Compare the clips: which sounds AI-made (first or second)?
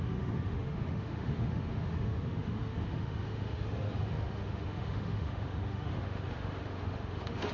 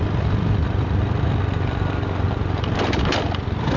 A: first